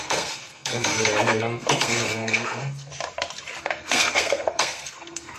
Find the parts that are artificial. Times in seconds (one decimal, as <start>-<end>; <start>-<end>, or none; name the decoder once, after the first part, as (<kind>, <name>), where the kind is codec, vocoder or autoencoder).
0.0-2.9 (codec, SNAC); 3.6-5.4